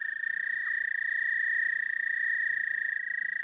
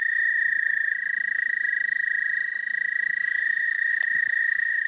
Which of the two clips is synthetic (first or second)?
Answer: second